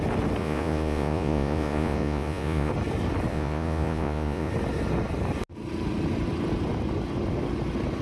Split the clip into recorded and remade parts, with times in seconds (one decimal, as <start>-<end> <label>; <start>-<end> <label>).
0.0-0.4 recorded; 0.4-2.7 remade; 2.7-3.3 recorded; 3.3-4.5 remade; 4.5-8.0 recorded